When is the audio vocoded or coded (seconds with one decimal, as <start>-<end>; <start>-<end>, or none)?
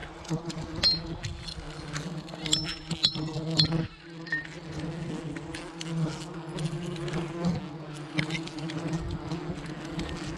none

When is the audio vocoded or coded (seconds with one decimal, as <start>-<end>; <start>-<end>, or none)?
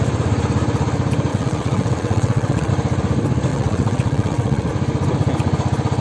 1.3-2.7; 3.5-4.7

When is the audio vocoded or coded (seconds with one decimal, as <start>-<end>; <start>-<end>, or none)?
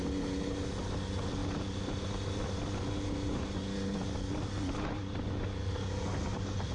none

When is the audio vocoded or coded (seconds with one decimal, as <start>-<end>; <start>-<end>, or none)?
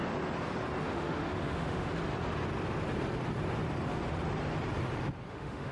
0.8-1.9; 5.3-5.7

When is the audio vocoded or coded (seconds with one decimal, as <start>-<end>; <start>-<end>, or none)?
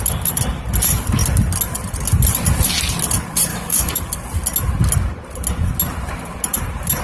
3.5-4.0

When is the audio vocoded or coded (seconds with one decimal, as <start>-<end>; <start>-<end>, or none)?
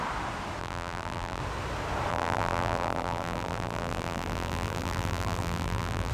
0.6-1.4; 2.1-6.1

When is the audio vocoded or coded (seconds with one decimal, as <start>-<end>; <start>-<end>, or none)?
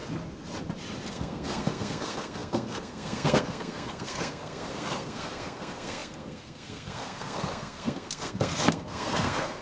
1.1-9.6